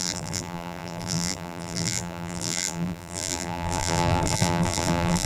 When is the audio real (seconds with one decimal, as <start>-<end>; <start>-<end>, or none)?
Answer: none

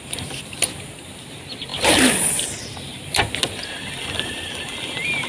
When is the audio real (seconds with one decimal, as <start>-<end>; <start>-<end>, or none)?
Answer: 0.0-5.3

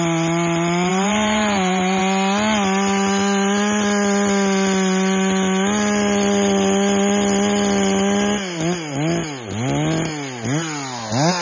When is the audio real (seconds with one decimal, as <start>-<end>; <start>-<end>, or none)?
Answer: 0.0-0.9; 2.0-11.4

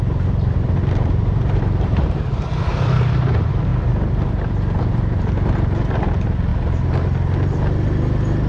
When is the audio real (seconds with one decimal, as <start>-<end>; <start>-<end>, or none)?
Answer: 3.7-4.8; 6.5-8.5

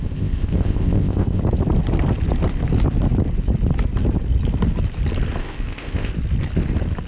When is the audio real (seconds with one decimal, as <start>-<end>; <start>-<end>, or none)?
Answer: 1.4-5.4; 6.1-7.1

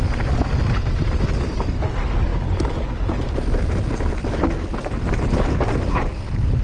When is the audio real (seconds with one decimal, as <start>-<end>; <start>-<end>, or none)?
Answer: 0.0-4.8; 5.6-6.6

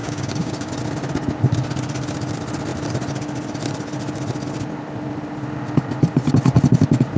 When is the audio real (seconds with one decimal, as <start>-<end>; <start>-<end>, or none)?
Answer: 0.7-7.2

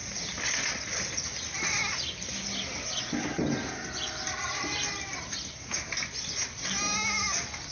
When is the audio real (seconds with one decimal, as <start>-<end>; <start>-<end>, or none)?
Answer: 0.0-7.7